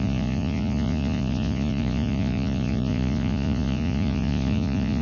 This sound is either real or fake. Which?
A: fake